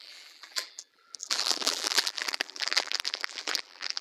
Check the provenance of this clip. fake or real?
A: fake